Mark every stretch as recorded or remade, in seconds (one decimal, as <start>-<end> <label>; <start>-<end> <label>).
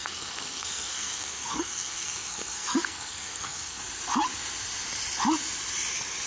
0.0-3.8 remade; 3.8-6.3 recorded